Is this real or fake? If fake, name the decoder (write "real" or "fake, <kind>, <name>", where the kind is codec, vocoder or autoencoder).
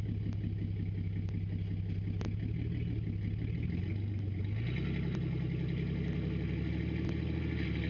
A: real